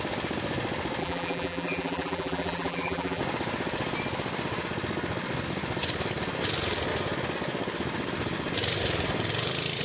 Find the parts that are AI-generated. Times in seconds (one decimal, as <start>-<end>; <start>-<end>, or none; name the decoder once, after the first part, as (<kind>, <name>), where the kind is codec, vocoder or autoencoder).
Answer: 1.0-3.2 (vocoder, BigVGAN v2)